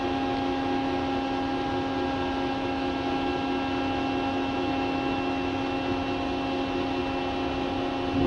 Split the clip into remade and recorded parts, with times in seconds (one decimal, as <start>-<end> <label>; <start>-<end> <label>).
0.0-8.3 recorded